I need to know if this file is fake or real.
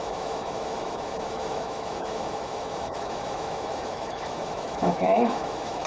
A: fake